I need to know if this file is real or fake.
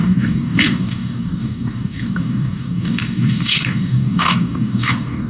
fake